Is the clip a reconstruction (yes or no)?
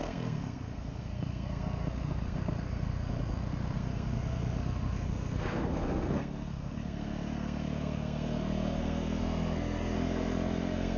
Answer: yes